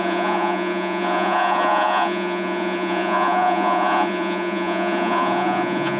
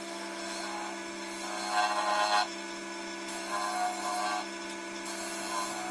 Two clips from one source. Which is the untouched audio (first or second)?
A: second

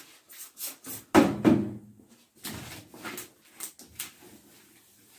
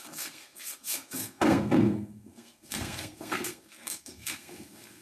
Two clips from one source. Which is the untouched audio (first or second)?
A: first